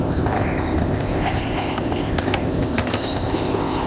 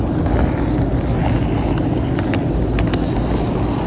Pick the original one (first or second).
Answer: second